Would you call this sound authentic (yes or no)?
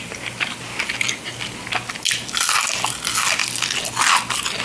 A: yes